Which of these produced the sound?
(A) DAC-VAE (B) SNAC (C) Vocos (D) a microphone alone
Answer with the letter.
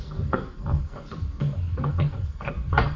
B